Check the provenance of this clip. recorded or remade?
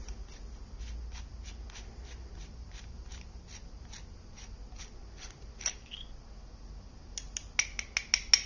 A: recorded